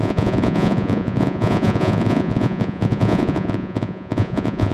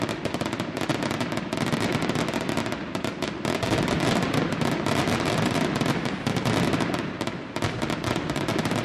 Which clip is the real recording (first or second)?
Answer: second